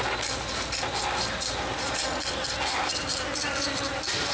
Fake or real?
real